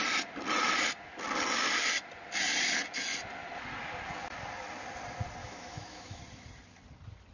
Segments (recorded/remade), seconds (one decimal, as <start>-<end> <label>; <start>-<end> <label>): 0.0-5.4 recorded; 5.4-6.2 remade; 6.2-7.3 recorded